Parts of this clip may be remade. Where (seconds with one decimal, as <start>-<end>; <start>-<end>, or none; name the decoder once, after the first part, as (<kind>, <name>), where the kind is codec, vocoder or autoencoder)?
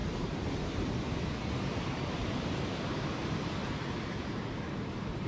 0.0-5.3 (vocoder, BigVGAN v2)